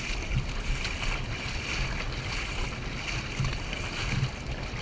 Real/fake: real